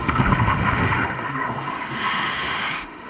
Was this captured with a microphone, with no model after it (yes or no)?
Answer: no